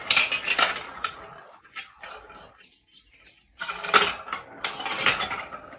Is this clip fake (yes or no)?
no